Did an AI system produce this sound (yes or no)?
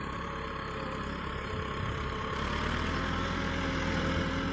no